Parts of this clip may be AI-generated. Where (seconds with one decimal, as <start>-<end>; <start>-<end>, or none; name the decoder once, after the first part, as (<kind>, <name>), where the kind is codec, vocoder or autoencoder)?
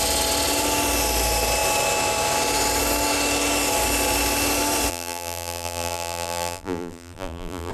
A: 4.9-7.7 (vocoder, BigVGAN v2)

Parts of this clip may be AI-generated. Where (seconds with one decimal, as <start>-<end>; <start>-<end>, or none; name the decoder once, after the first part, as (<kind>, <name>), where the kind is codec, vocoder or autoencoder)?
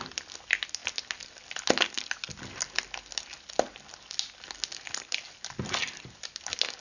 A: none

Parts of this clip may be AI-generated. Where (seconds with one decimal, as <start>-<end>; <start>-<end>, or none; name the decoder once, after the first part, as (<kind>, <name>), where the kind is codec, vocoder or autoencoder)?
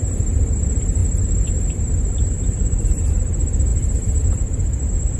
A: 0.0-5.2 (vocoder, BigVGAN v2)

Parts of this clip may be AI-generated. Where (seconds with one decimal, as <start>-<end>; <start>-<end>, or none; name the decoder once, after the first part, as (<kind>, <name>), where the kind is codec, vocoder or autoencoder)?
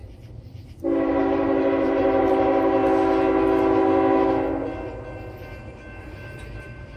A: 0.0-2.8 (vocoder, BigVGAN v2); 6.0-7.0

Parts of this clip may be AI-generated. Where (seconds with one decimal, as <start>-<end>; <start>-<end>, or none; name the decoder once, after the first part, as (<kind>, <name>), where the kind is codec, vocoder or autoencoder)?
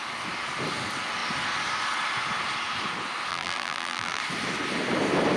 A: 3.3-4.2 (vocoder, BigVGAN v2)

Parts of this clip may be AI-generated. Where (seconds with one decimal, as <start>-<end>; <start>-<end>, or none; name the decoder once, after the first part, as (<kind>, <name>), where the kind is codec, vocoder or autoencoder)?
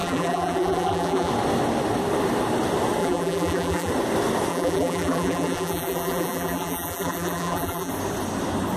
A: 0.0-1.3 (vocoder, BigVGAN v2); 3.0-3.9; 4.5-7.9